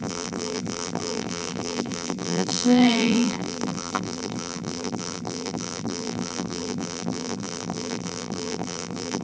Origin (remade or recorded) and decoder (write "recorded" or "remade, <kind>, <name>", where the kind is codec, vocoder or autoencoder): remade, vocoder, BigVGAN v2